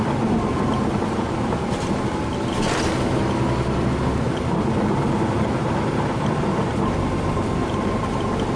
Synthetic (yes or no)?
no